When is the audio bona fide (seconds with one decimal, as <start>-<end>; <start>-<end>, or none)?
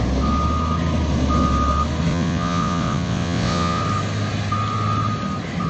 0.0-2.1; 3.8-5.7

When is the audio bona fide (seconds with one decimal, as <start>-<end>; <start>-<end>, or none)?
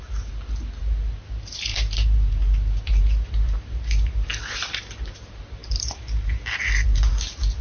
0.0-1.7; 4.4-5.6; 7.1-7.6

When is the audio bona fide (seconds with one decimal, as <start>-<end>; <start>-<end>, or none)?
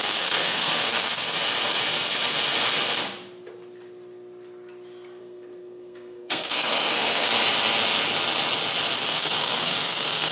1.2-5.2; 7.3-9.1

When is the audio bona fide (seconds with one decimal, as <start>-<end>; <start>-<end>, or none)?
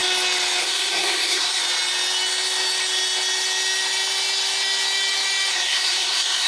0.0-0.6; 1.6-5.5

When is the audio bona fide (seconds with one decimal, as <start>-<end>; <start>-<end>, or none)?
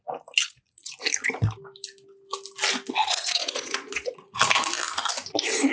0.0-0.4; 0.9-3.0; 4.4-5.7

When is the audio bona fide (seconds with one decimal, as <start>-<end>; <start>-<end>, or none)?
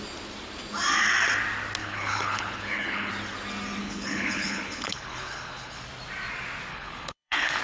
0.0-1.8; 3.1-3.8; 5.8-6.7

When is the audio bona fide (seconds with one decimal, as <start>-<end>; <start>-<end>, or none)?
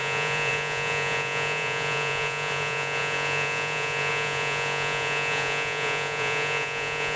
none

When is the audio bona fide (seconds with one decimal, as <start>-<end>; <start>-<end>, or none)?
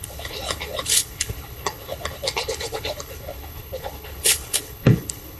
none